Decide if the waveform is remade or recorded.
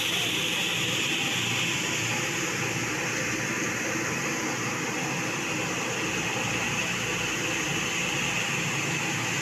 recorded